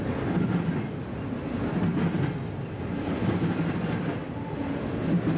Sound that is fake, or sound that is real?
real